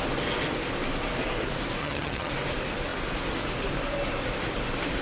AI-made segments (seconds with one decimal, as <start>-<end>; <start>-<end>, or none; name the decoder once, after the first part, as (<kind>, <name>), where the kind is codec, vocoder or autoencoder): 1.8-2.3 (vocoder, HiFi-GAN)